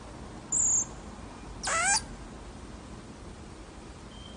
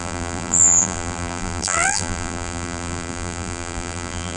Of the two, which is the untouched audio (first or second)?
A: first